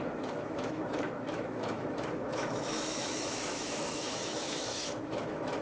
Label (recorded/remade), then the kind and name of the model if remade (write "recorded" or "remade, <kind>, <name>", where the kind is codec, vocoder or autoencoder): remade, autoencoder, DAC-VAE